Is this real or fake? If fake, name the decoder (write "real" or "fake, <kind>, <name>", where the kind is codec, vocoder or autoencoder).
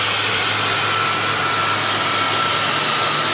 real